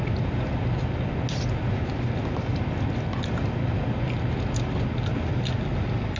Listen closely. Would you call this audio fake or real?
real